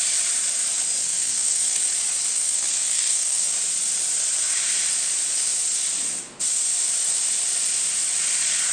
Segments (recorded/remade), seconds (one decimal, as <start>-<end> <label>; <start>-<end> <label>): 0.0-1.0 recorded; 1.0-1.8 remade; 1.8-2.3 recorded; 2.3-3.5 remade; 3.5-8.7 recorded